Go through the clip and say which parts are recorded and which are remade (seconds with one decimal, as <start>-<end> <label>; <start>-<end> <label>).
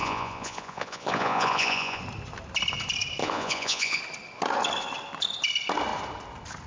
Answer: 0.0-2.0 remade; 2.0-3.2 recorded; 3.2-4.0 remade; 4.0-6.7 recorded